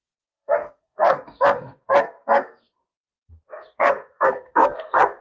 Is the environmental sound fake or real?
fake